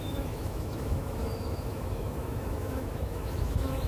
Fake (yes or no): yes